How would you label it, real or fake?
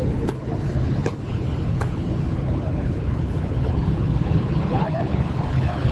fake